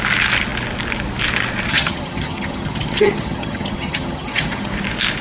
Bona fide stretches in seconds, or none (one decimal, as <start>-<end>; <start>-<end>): 0.0-1.7; 4.7-5.2